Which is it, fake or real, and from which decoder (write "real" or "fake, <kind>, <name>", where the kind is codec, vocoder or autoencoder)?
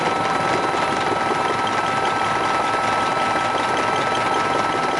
real